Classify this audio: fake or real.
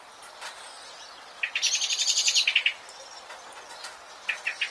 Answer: real